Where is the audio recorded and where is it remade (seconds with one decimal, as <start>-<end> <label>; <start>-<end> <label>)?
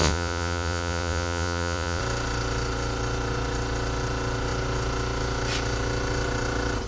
0.0-2.0 remade; 2.0-6.9 recorded